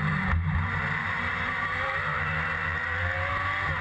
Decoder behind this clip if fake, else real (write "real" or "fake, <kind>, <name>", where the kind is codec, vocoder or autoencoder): fake, vocoder, BigVGAN v2